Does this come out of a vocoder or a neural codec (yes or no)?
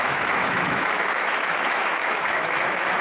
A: yes